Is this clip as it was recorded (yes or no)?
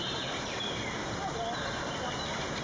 yes